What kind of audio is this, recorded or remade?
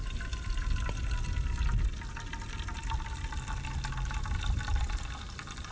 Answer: recorded